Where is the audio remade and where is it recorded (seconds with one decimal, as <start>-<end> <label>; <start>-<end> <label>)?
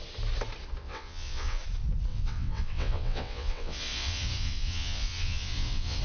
0.0-0.8 recorded; 0.8-1.6 remade; 1.6-2.1 recorded; 2.1-6.0 remade